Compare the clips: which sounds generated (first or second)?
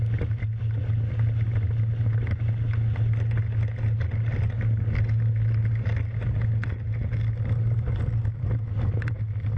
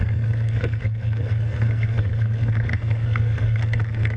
second